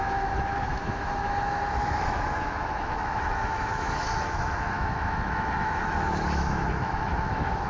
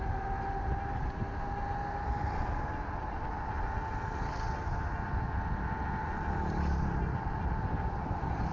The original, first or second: second